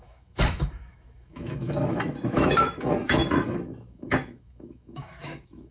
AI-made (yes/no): yes